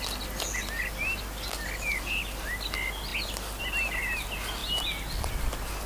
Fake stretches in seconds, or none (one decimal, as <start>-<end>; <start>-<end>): none